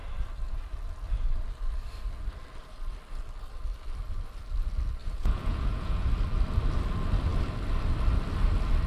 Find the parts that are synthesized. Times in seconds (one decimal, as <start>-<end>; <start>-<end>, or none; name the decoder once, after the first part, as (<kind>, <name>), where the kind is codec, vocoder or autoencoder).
5.0-6.1 (vocoder, Vocos)